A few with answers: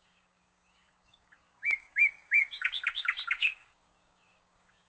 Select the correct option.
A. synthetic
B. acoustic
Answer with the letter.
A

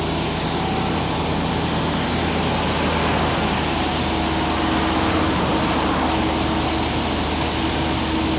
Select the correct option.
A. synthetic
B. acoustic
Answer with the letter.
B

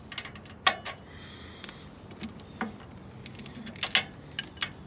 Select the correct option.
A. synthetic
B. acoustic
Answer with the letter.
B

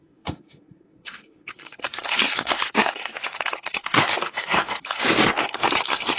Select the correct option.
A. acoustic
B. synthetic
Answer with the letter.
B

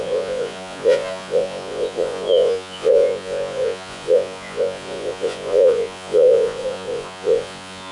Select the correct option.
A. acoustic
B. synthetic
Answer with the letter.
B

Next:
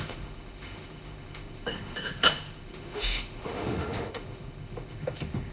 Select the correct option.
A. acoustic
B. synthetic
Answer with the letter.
B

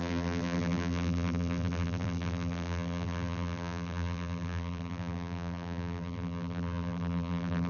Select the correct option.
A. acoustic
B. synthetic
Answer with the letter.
B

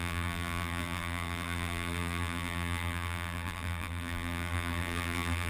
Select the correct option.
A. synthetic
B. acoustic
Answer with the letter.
A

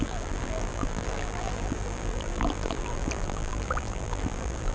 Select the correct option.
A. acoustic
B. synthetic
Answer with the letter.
B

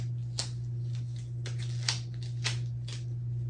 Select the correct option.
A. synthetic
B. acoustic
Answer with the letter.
B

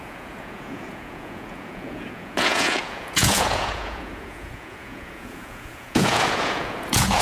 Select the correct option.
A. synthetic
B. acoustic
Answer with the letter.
A